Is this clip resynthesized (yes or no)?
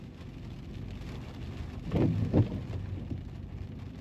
no